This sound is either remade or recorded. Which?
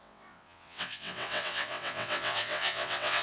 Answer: remade